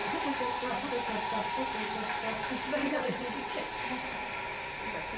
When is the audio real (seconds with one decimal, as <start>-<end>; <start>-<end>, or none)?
0.0-2.8; 3.5-5.2